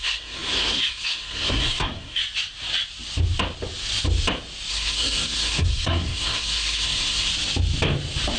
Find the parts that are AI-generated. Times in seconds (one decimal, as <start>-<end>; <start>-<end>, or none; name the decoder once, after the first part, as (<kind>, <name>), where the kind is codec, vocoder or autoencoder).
0.0-2.2 (codec, SNAC); 4.7-7.3